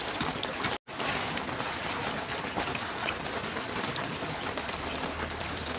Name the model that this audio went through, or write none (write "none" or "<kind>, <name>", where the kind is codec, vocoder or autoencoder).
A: none